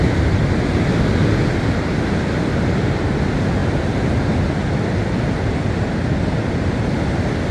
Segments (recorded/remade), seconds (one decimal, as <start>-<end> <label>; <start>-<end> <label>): 0.0-3.6 recorded; 3.6-4.9 remade; 4.9-7.5 recorded